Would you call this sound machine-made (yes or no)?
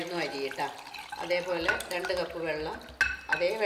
no